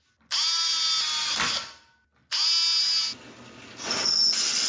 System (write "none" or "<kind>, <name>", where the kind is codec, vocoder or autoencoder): none